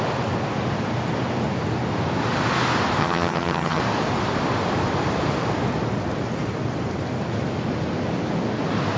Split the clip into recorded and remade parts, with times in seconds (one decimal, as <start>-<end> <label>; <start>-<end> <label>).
0.0-3.0 recorded; 3.0-3.8 remade; 3.8-9.0 recorded